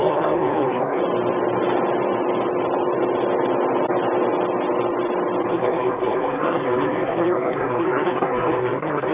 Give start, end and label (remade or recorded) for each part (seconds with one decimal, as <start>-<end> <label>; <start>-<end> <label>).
0.0-1.0 remade; 1.0-5.5 recorded; 5.5-9.1 remade